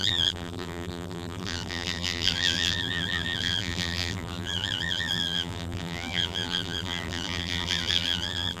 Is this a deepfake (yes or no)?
yes